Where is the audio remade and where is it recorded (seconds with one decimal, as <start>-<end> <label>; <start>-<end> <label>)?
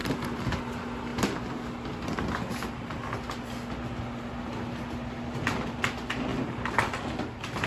0.0-7.7 recorded